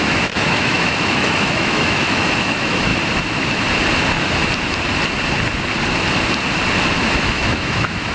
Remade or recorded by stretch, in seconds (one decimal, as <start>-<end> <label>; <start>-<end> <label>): 0.0-2.9 remade; 2.9-6.8 recorded; 6.8-8.1 remade